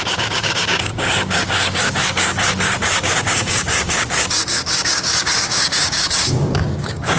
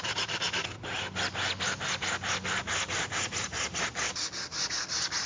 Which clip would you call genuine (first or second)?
second